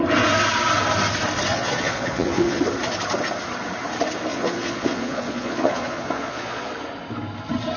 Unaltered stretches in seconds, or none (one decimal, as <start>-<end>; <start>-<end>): 0.0-1.5; 2.6-4.3; 6.7-7.8